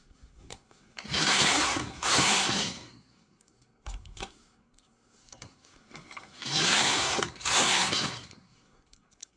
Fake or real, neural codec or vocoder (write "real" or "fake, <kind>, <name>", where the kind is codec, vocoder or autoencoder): fake, codec, SNAC